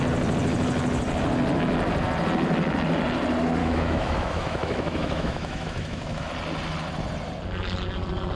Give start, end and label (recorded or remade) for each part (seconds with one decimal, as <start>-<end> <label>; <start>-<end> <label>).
0.0-3.6 recorded; 3.6-6.3 remade; 6.3-8.4 recorded